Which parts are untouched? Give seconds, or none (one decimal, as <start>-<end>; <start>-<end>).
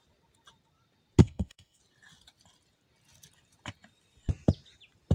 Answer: 0.0-1.2; 1.8-5.1